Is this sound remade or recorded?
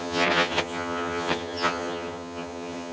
remade